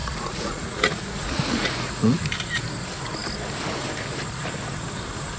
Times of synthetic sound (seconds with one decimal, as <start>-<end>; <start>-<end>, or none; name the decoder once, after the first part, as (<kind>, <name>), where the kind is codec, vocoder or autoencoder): 0.0-2.2 (vocoder, Vocos)